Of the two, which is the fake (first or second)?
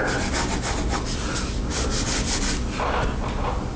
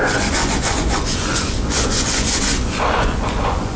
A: second